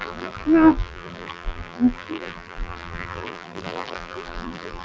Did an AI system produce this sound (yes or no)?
yes